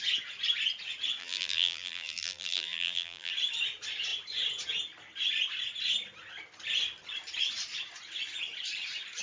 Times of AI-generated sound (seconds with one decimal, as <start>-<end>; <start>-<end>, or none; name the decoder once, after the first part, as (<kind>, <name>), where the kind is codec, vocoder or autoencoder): 1.2-3.3 (vocoder, BigVGAN v2)